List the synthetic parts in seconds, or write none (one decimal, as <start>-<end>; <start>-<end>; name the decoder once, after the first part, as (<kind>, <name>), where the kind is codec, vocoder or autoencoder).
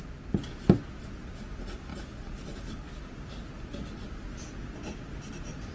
none